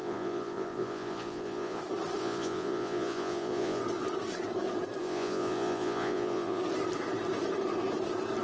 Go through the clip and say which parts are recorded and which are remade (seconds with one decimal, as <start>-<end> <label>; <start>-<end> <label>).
0.0-1.8 remade; 1.8-2.2 recorded; 2.2-3.8 remade; 3.8-5.0 recorded; 5.0-6.6 remade; 6.6-8.4 recorded